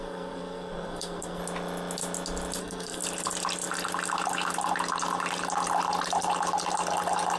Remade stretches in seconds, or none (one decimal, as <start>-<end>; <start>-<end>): 0.0-1.4; 2.6-3.0